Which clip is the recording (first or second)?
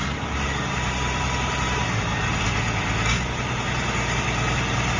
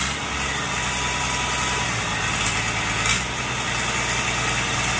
second